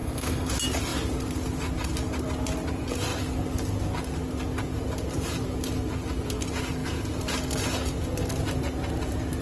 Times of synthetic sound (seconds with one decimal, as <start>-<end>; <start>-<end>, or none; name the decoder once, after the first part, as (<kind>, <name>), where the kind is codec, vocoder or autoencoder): 0.0-0.5 (codec, SNAC)